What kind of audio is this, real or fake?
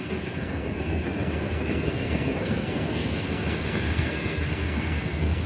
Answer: fake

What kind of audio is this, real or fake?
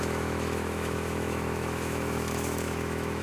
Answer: fake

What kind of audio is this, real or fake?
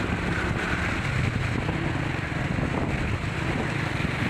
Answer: real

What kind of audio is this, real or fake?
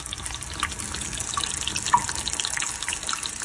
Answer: real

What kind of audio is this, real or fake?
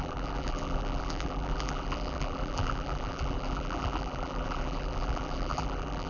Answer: fake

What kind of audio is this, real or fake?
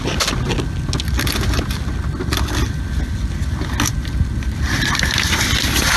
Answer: real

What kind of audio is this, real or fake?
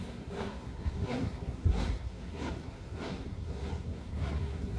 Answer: fake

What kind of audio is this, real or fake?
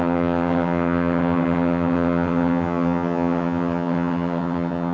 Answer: fake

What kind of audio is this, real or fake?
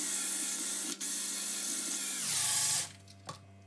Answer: real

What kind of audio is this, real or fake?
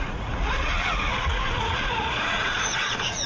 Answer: fake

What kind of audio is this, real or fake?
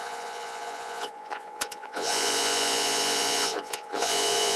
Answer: fake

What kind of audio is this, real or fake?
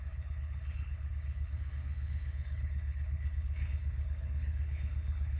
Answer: fake